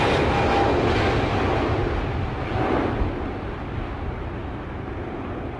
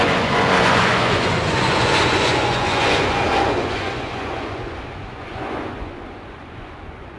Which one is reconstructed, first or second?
second